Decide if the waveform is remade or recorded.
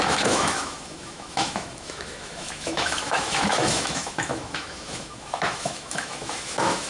remade